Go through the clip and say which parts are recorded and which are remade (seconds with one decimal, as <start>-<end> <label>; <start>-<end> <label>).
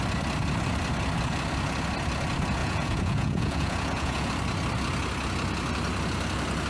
0.0-2.6 recorded; 2.6-4.3 remade; 4.3-6.7 recorded